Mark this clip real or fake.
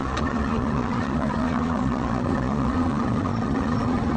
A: fake